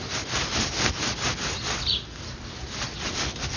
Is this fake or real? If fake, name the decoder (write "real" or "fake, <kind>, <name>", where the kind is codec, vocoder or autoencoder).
real